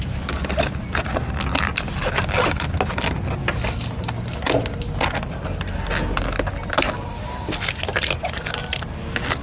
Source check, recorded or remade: recorded